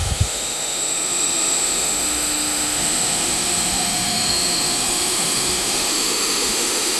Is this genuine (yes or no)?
no